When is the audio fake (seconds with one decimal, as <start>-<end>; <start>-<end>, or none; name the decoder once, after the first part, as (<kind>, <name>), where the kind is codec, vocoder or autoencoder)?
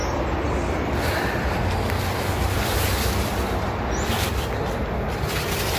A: none